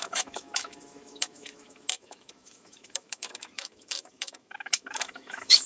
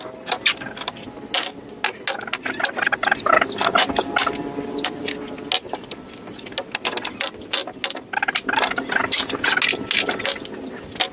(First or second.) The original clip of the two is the second